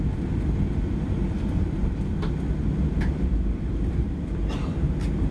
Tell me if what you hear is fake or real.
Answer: real